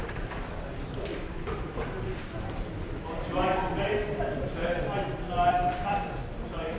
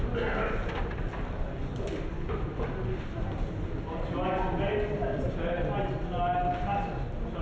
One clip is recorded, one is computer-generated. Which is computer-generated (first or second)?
first